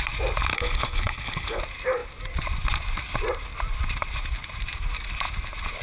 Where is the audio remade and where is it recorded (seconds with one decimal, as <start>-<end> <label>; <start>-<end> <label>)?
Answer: 0.0-0.5 recorded; 0.5-1.6 remade; 1.6-5.8 recorded